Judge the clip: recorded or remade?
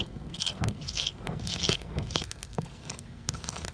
remade